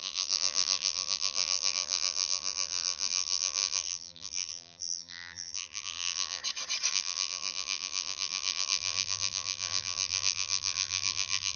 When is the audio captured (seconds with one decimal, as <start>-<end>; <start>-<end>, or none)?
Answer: 6.4-6.9